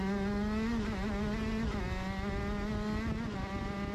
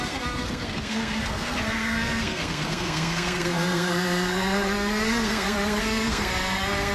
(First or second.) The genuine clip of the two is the first